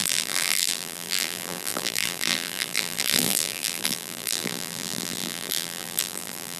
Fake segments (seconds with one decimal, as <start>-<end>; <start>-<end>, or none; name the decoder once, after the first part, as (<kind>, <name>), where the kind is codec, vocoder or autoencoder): 0.0-6.6 (vocoder, BigVGAN v2)